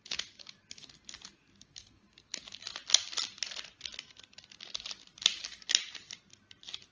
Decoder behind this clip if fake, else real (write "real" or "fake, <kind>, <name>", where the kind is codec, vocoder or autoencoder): real